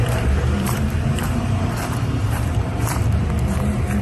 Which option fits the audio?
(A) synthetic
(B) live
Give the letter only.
A